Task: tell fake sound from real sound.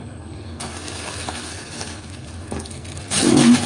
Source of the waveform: fake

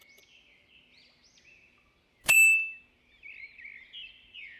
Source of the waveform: real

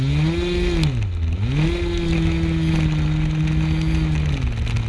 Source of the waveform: real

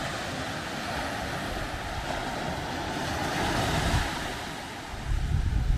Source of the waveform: real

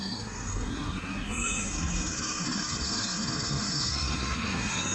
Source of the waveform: fake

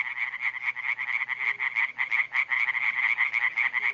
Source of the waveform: real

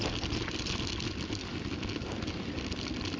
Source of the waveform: real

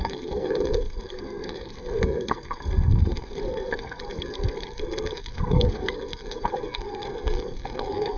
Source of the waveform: fake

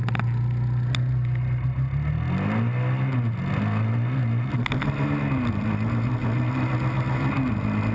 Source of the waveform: real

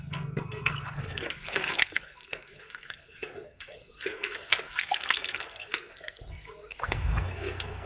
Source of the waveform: fake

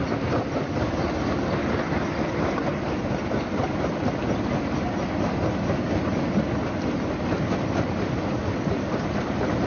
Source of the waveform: real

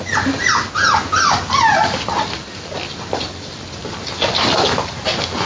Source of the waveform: real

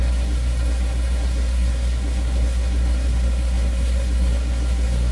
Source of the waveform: fake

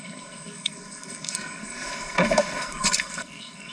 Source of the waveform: fake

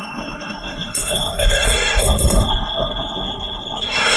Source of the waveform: fake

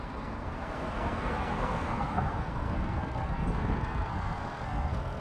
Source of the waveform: fake